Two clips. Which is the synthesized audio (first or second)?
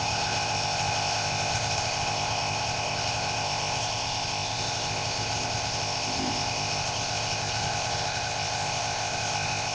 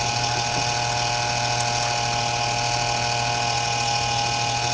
first